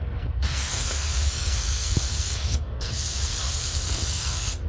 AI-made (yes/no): yes